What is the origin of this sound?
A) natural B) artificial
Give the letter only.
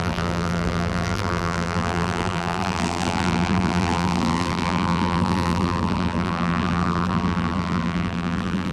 B